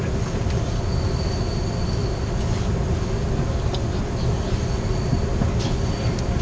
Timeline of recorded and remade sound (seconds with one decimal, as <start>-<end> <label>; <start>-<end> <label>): 0.0-6.4 recorded